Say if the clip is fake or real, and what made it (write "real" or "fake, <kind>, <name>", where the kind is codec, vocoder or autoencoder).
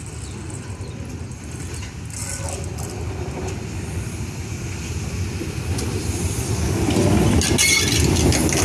real